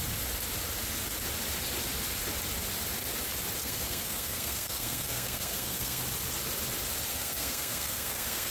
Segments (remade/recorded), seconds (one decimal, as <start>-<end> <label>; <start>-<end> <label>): 0.0-3.6 recorded; 3.6-6.0 remade; 6.0-7.1 recorded; 7.1-8.5 remade